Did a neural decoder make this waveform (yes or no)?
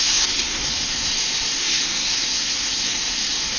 yes